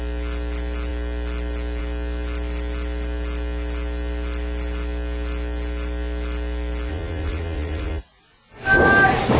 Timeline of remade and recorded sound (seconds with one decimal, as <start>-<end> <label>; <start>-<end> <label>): 0.0-6.9 recorded; 6.9-8.2 remade; 8.2-9.4 recorded